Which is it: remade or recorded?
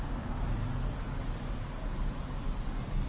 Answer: recorded